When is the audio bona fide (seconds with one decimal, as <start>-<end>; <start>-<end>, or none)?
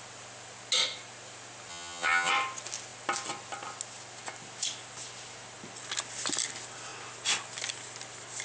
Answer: 0.0-1.7; 2.3-8.4